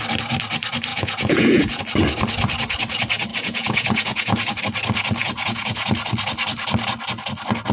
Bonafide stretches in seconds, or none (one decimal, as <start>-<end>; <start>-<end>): 0.0-0.9; 1.8-3.3; 4.6-5.2; 5.9-7.7